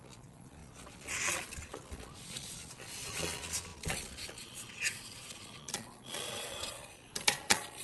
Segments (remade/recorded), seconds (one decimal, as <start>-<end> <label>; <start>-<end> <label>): 0.0-7.8 remade